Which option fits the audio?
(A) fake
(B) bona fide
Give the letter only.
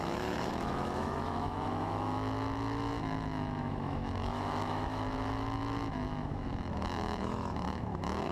A